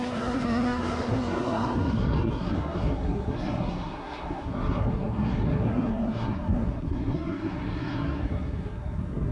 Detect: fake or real fake